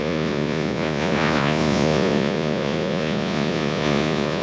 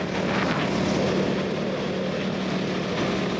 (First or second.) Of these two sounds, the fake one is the first